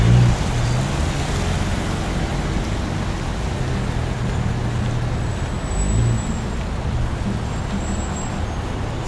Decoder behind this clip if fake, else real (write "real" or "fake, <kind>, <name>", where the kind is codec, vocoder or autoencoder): real